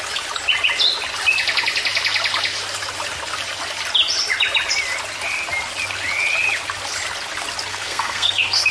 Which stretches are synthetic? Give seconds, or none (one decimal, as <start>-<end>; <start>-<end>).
7.7-8.7